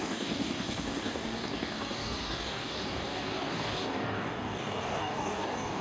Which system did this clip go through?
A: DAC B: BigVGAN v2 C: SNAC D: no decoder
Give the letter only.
A